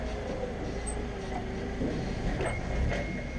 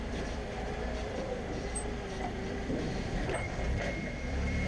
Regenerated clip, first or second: second